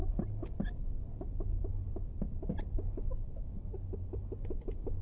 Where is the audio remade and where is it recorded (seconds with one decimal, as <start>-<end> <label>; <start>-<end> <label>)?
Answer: 0.0-5.0 recorded